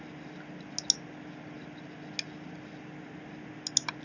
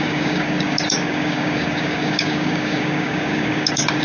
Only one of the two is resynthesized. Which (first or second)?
second